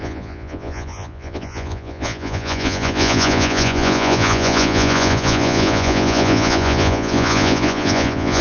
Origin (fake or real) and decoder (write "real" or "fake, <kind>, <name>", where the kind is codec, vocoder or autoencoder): fake, vocoder, Vocos